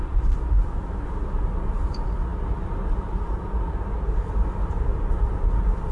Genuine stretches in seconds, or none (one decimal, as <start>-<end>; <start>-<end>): 0.0-5.9